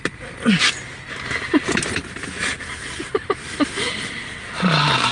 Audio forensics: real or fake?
real